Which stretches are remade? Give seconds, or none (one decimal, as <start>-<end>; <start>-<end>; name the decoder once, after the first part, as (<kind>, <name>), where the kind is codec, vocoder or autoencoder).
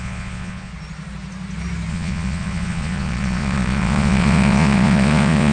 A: 0.0-0.7 (vocoder, Vocos); 1.9-5.5